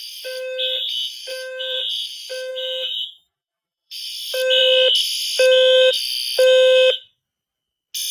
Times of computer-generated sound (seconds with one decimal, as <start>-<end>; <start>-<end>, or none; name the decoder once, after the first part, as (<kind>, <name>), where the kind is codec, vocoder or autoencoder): 1.3-1.8 (vocoder, BigVGAN v2); 2.5-3.9